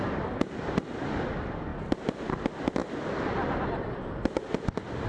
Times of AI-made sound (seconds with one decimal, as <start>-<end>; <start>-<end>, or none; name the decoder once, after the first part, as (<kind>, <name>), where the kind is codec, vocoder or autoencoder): none